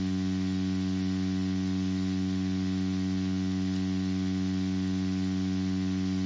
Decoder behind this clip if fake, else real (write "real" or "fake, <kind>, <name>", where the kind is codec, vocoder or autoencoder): real